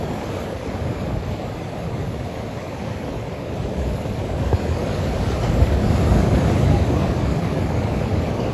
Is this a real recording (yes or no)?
no